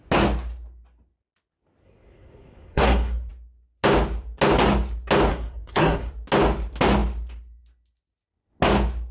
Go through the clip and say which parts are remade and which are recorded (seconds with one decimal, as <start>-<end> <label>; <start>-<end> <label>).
0.0-1.8 recorded; 1.8-3.3 remade; 3.3-5.3 recorded; 5.3-6.1 remade; 6.1-9.1 recorded